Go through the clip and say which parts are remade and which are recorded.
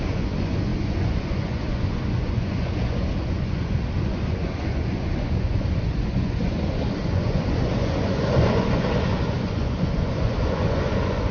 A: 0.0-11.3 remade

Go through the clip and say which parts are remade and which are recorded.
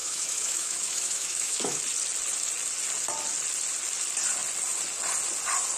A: 0.0-1.8 remade; 1.8-5.8 recorded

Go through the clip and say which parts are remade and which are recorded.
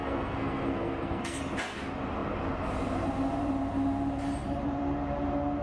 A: 0.0-1.4 remade; 1.4-5.6 recorded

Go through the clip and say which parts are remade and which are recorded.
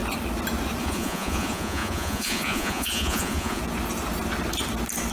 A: 0.0-0.8 recorded; 0.8-3.6 remade; 3.6-5.1 recorded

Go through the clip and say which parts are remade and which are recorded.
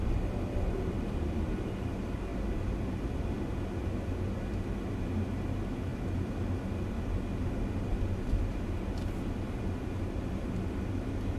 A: 0.0-11.4 recorded